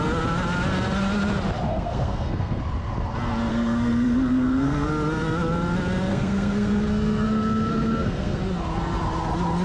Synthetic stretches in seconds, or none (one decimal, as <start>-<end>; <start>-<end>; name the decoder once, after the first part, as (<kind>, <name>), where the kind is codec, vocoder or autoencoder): 1.7-2.6 (codec, SNAC); 3.5-4.9; 6.1-8.4